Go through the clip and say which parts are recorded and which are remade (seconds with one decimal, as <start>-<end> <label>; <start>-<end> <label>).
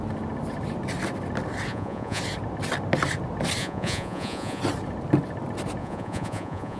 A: 0.0-1.7 recorded; 1.7-2.2 remade; 2.2-3.6 recorded; 3.6-4.6 remade; 4.6-5.8 recorded; 5.8-6.8 remade